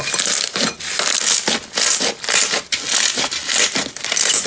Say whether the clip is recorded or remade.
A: recorded